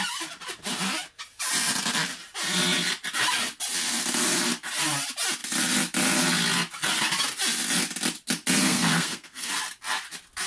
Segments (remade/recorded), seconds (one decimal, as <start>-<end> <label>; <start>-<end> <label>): 0.0-8.6 recorded; 8.6-9.5 remade; 9.5-10.5 recorded